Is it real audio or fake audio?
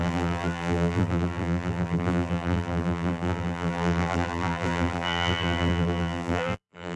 fake